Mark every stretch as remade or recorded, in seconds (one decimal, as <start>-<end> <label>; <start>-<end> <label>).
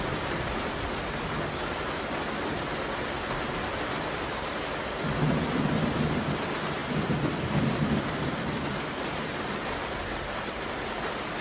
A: 0.0-11.4 recorded